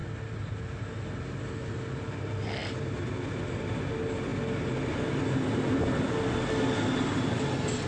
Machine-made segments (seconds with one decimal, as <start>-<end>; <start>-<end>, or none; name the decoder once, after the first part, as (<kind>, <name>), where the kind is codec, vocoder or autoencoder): none